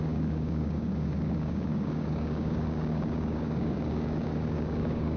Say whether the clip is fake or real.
fake